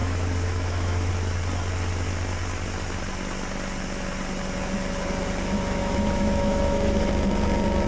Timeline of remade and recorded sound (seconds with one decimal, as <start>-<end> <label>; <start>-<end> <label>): 0.0-1.1 remade; 1.1-5.8 recorded; 5.8-7.1 remade; 7.1-7.9 recorded